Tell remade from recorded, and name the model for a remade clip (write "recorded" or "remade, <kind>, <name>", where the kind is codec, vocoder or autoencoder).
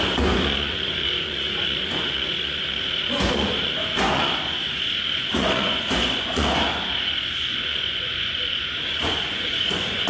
remade, vocoder, Vocos